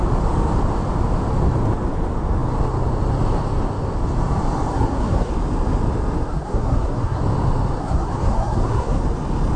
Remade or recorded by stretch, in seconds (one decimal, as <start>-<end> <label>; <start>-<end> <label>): 0.0-4.7 recorded; 4.7-5.3 remade; 5.3-6.3 recorded; 6.3-7.2 remade; 7.2-7.8 recorded; 7.8-9.0 remade; 9.0-9.6 recorded